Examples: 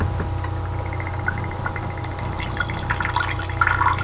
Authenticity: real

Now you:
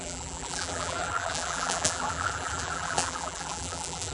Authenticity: fake